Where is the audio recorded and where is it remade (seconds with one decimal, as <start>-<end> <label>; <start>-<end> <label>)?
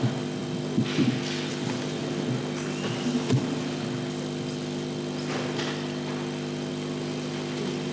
0.0-7.9 recorded